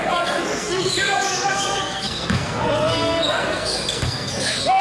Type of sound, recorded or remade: remade